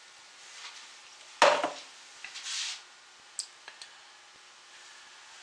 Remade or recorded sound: recorded